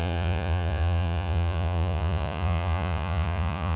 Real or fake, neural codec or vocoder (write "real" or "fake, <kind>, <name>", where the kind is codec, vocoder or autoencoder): fake, vocoder, Vocos